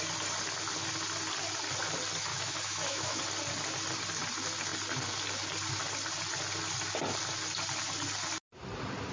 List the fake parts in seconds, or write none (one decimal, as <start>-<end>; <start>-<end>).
2.3-3.2